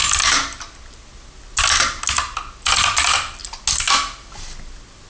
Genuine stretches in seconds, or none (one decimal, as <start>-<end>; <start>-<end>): 0.0-5.1